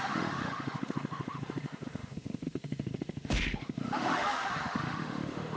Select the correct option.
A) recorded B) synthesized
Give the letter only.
B